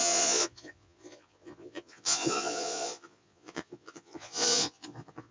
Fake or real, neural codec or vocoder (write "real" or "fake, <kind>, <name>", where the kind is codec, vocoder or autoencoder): fake, vocoder, Vocos